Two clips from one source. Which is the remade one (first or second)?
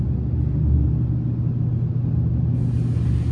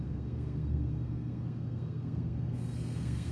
second